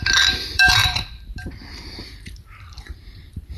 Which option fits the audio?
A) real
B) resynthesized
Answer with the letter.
B